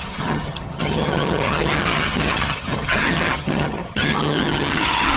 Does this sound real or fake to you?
fake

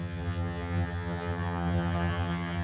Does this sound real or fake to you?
fake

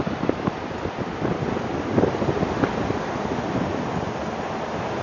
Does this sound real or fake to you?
real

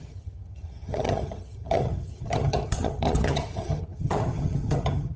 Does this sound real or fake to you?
fake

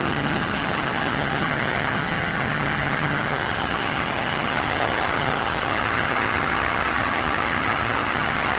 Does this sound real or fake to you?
fake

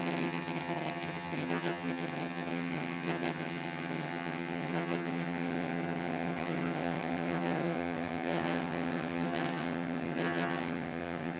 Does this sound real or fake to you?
fake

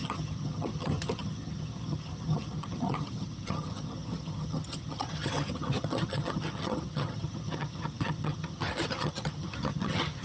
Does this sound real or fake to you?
fake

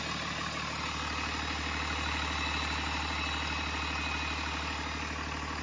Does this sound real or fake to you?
real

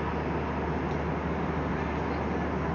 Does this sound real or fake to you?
real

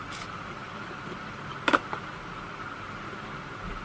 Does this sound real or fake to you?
real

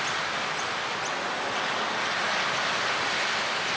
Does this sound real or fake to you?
real